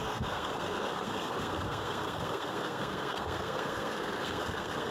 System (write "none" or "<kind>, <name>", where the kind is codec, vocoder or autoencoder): codec, SNAC